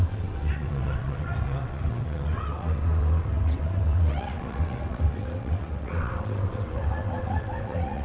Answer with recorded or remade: remade